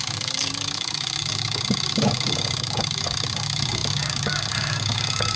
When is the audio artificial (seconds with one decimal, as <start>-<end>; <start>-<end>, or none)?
0.0-5.4